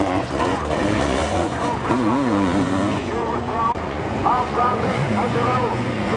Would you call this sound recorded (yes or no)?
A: no